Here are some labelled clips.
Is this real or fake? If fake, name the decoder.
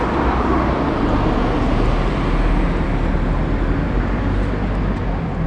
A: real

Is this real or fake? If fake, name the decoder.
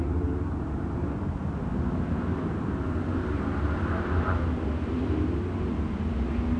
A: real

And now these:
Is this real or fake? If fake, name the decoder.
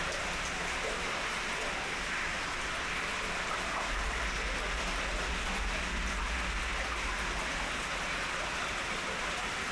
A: real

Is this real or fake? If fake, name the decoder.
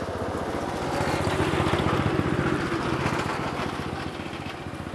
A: real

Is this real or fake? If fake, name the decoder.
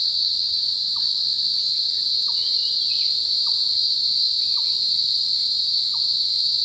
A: real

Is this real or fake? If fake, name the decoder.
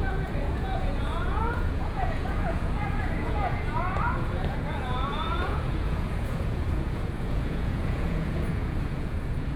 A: fake, vocoder, Vocos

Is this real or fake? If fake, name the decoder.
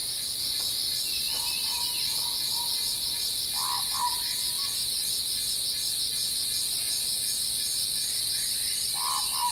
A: real